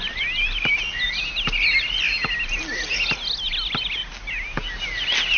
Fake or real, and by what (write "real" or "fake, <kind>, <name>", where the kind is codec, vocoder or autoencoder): real